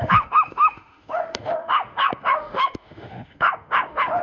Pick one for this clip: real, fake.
fake